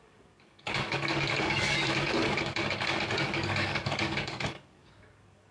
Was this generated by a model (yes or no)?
yes